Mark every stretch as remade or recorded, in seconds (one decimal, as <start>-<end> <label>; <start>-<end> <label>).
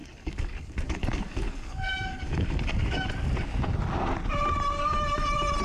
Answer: 0.0-3.1 remade; 3.1-5.6 recorded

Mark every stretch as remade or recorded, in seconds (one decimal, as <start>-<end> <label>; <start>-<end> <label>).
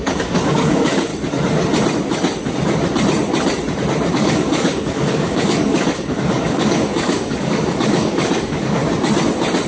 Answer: 0.0-1.1 remade; 1.1-4.1 recorded; 4.1-8.8 remade; 8.8-9.7 recorded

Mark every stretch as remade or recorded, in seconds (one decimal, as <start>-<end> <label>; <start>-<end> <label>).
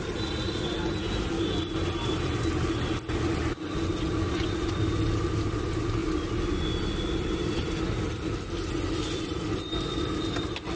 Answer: 0.0-10.8 recorded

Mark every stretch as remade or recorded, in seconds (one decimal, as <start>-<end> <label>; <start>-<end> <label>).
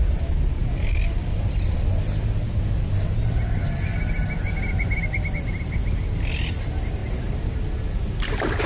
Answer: 0.0-8.7 recorded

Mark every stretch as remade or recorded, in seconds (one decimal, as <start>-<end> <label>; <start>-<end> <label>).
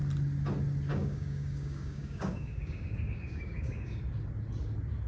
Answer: 0.0-0.9 recorded; 0.9-4.0 remade; 4.0-5.1 recorded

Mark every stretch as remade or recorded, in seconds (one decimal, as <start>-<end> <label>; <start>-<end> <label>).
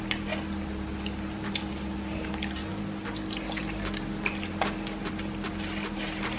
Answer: 0.0-6.4 recorded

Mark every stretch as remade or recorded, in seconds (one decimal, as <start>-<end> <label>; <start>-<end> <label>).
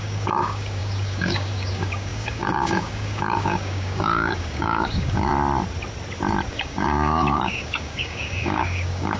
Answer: 0.0-5.3 remade; 5.3-6.5 recorded; 6.5-9.2 remade